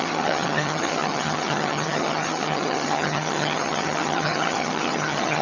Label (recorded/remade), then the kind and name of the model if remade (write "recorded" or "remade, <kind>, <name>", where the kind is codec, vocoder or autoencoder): remade, vocoder, HiFi-GAN